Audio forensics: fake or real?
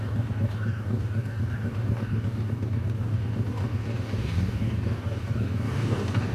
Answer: fake